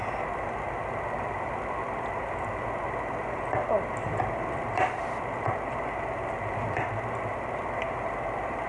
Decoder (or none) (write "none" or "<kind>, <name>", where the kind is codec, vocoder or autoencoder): none